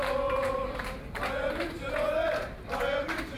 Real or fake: real